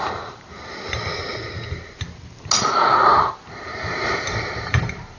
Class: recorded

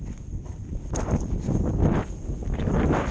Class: remade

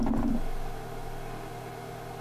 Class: recorded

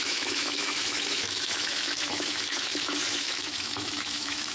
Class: remade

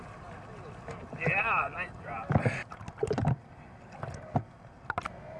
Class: recorded